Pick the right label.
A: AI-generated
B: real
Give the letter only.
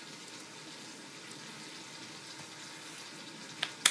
B